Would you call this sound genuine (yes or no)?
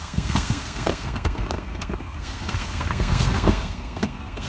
no